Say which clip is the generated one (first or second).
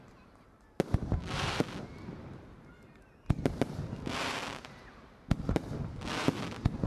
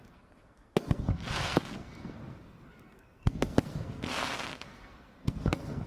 second